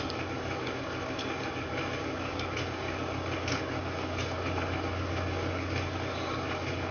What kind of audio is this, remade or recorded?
remade